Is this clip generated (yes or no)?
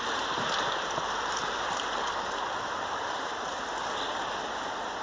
yes